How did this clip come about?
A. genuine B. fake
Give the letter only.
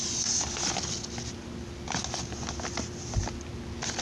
A